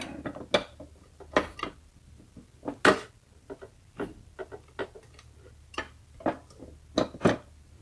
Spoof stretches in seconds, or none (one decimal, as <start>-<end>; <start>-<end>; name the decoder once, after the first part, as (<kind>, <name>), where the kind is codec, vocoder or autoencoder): none